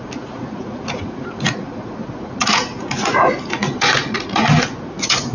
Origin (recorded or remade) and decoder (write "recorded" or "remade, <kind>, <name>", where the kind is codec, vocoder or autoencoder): remade, vocoder, Vocos